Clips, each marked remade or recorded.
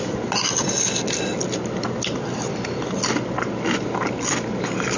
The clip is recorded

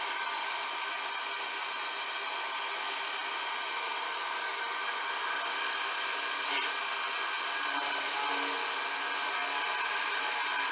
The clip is recorded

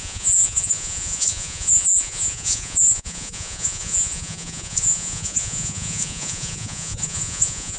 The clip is remade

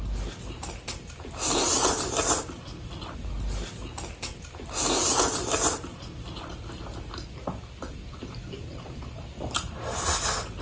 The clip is recorded